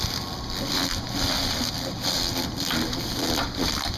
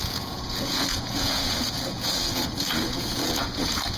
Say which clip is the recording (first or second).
first